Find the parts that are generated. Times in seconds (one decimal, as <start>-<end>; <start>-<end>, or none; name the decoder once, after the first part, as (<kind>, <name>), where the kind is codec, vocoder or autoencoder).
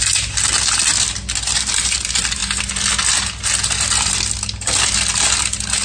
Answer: none